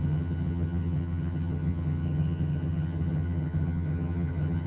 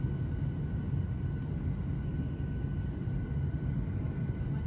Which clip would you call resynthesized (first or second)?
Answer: first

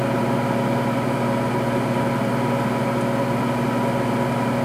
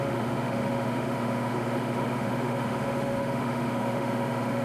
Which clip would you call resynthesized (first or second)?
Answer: second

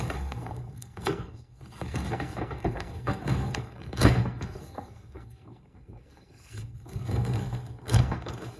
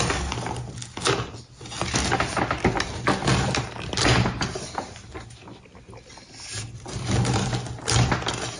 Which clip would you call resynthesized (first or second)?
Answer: first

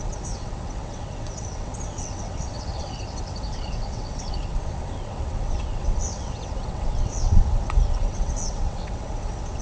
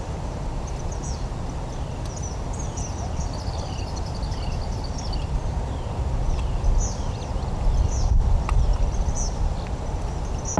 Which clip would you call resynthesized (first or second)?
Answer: first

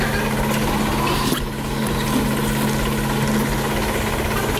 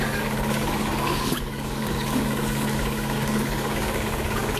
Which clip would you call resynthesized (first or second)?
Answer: second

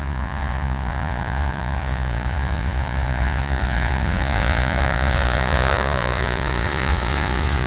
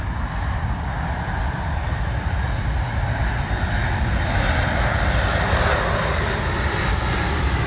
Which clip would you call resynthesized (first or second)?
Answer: first